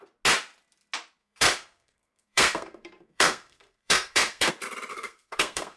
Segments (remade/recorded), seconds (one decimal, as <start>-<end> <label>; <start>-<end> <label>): 0.0-1.2 recorded; 1.2-4.5 remade; 4.5-4.9 recorded; 4.9-5.8 remade